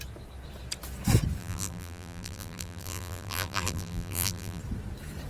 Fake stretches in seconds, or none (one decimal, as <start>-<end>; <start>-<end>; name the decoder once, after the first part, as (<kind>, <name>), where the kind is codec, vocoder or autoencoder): 1.4-4.6 (vocoder, BigVGAN v2)